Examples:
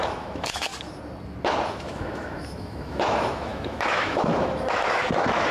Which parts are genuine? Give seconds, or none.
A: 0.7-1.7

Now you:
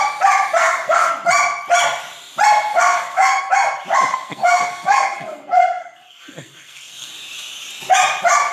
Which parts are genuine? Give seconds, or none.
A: 0.0-0.6; 1.1-2.7; 3.5-4.1; 7.1-8.5

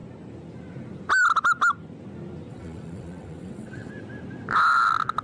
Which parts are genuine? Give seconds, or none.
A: 0.0-2.5; 3.9-5.2

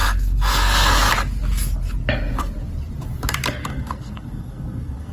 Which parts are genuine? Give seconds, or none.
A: 1.1-3.6

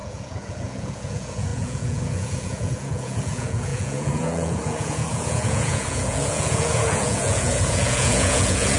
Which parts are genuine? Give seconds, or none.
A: none